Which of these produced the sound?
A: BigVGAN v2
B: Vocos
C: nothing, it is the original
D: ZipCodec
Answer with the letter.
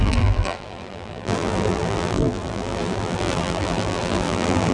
A